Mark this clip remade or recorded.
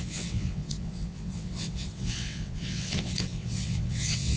remade